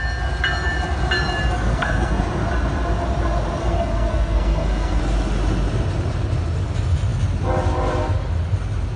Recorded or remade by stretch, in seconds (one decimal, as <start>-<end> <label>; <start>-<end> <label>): 0.0-1.7 recorded; 1.7-2.2 remade; 2.2-3.6 recorded; 3.6-5.0 remade; 5.0-9.0 recorded